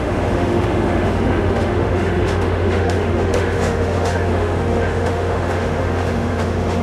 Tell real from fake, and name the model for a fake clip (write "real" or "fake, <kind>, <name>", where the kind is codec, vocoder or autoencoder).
fake, autoencoder, DAC-VAE